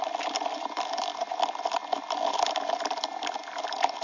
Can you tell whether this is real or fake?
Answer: real